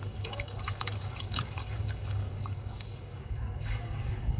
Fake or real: fake